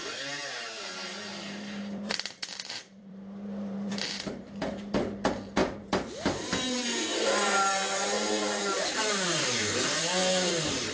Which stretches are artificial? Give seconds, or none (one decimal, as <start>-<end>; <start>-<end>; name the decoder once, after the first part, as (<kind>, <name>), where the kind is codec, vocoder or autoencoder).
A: 0.0-10.9 (vocoder, BigVGAN v2)